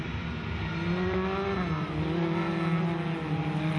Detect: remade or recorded recorded